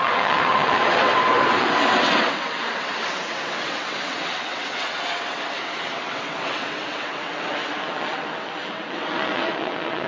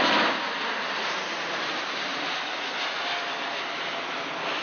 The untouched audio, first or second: second